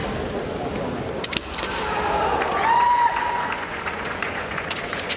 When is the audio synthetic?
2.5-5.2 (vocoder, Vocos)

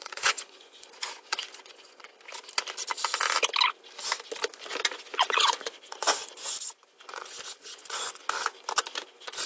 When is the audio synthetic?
0.0-2.1 (vocoder, Vocos); 4.9-8.2; 9.0-9.5

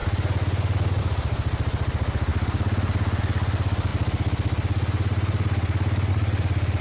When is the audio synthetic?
none

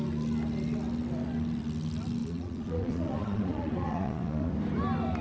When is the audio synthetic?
2.2-4.5 (vocoder, Vocos)

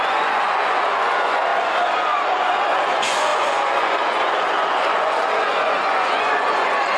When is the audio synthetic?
0.0-7.0 (vocoder, Vocos)